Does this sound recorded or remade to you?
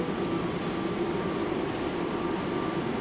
remade